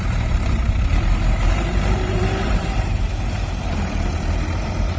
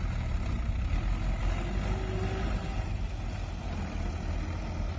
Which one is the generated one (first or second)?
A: first